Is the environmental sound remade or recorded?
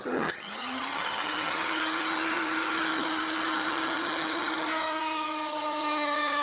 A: remade